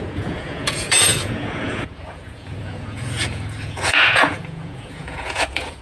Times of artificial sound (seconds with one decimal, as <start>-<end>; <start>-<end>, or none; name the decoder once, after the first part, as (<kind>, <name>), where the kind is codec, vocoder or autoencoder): 0.0-5.8 (vocoder, Vocos)